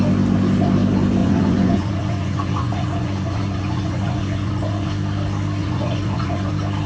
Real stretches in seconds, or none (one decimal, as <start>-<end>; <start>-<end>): 0.0-1.2; 4.9-5.6; 6.5-6.9